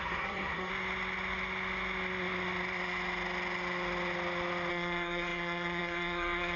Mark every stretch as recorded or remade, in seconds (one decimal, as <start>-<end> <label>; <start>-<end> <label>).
0.0-0.7 remade; 0.7-4.7 recorded; 4.7-6.6 remade

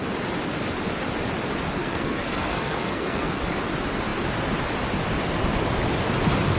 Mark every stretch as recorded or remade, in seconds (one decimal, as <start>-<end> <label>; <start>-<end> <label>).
0.0-1.8 recorded; 1.8-3.4 remade; 3.4-6.6 recorded

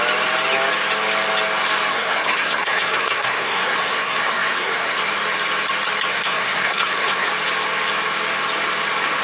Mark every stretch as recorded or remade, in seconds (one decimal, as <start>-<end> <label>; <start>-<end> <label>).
0.0-1.9 recorded; 1.9-5.0 remade; 5.0-6.1 recorded; 6.1-7.3 remade; 7.3-9.2 recorded

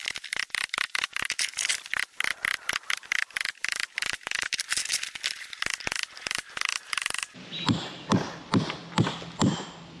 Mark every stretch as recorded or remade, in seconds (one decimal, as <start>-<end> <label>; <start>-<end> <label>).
0.0-10.0 recorded